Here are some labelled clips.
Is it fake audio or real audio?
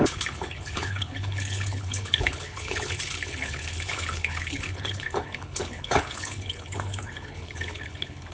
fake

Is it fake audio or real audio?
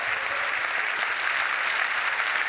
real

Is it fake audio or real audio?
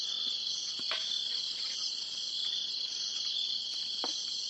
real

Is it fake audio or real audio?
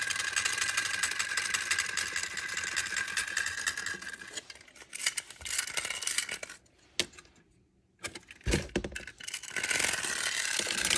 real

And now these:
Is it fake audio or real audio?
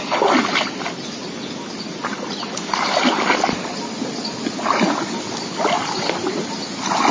real